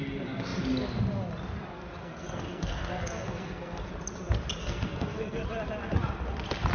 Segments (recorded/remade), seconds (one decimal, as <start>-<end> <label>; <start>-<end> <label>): 0.0-2.0 recorded; 2.0-3.9 remade; 3.9-4.6 recorded; 4.6-5.4 remade; 5.4-6.7 recorded